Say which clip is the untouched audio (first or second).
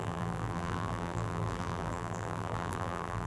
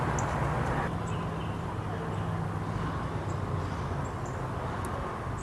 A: second